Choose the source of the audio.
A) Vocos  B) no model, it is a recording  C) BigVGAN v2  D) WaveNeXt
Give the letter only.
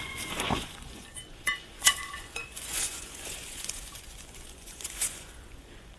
A